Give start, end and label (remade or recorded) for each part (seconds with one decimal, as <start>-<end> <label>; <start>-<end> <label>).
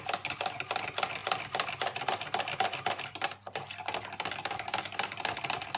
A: 0.0-5.8 recorded